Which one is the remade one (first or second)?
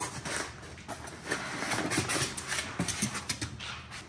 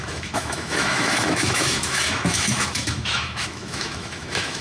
second